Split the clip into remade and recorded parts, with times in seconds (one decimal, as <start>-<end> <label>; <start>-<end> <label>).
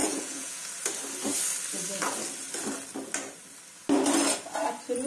0.0-0.7 remade; 0.7-5.1 recorded